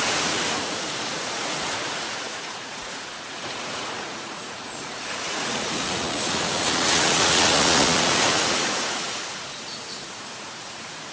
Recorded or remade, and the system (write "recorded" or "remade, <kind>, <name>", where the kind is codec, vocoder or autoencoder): remade, vocoder, Vocos